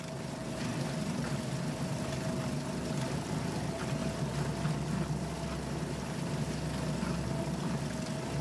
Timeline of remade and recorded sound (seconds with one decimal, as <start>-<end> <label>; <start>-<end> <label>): 0.0-8.4 recorded